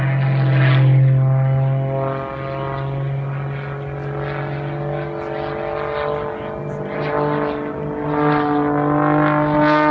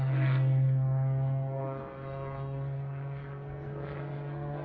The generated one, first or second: second